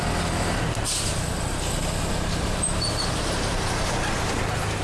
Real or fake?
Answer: real